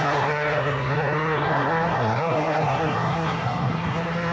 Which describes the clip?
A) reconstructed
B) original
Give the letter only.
A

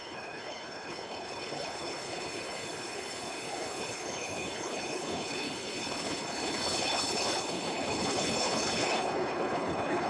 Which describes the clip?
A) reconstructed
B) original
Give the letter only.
A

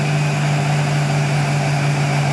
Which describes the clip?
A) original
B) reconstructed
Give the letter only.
A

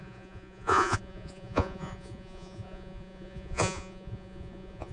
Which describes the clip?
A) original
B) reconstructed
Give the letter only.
B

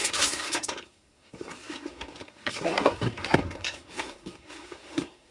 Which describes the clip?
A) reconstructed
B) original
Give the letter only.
A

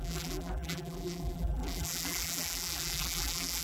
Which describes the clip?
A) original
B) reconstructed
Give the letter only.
B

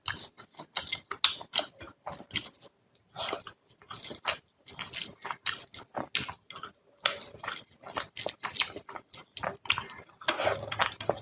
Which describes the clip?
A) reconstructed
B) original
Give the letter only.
B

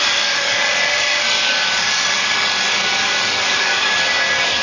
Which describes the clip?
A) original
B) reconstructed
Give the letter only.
B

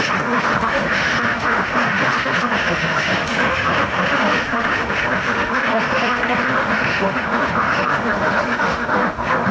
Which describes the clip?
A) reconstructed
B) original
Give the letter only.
A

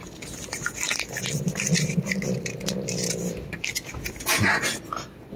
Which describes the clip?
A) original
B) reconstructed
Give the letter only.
A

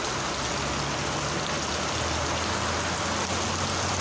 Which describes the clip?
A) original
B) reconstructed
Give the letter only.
A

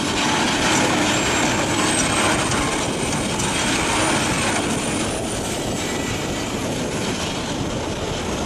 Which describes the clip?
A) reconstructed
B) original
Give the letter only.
B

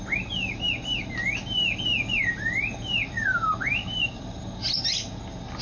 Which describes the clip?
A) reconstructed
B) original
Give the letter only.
B